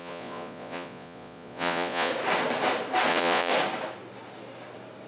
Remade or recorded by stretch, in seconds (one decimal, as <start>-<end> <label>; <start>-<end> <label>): 0.0-2.1 remade; 2.1-3.1 recorded; 3.1-3.5 remade; 3.5-5.1 recorded